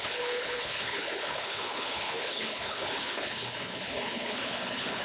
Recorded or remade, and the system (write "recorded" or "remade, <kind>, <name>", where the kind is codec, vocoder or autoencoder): remade, codec, HILCodec